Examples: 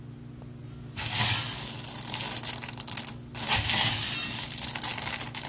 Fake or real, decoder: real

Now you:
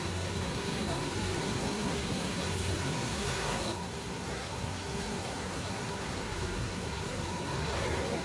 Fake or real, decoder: fake, codec, SNAC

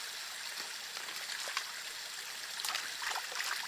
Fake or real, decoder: real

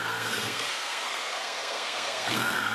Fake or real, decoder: fake, codec, SNAC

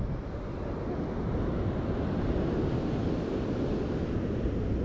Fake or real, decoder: real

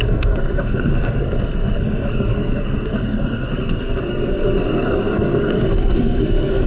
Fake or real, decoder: fake, codec, SNAC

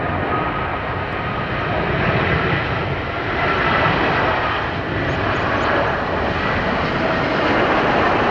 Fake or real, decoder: real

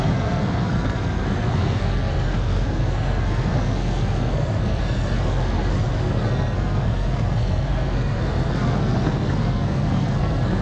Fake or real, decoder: fake, codec, SNAC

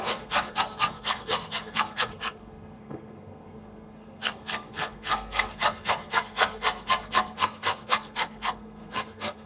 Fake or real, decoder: fake, codec, SNAC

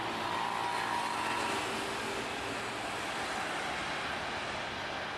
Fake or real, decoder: real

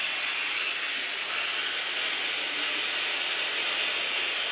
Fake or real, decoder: real